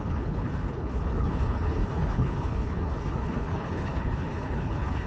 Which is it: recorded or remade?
remade